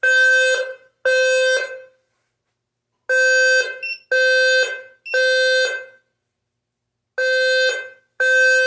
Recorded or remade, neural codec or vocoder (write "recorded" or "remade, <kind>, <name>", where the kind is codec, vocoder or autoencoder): recorded